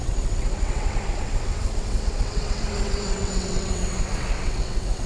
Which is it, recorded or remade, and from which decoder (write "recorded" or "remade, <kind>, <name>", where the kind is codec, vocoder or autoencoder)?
remade, vocoder, WaveNeXt